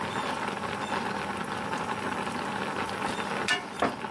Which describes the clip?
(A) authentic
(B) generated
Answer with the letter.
A